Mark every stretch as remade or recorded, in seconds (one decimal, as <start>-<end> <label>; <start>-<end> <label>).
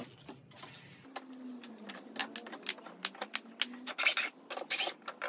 0.0-5.3 recorded